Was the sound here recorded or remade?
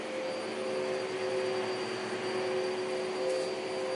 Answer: recorded